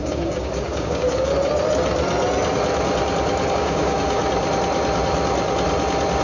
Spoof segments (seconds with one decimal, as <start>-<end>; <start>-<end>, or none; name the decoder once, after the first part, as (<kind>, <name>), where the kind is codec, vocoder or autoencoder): 0.0-1.3 (codec, DAC); 3.5-4.2